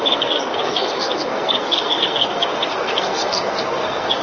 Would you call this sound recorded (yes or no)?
no